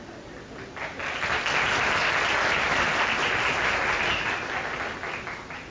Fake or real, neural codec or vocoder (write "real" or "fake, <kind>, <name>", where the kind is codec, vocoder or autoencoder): real